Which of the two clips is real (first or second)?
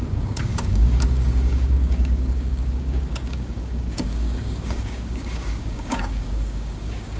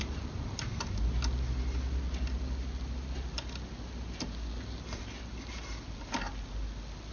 second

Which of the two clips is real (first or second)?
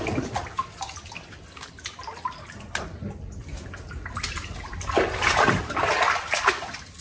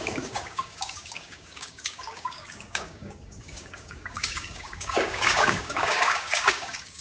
first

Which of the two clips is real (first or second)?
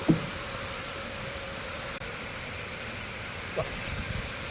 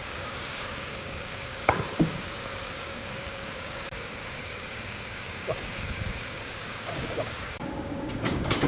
first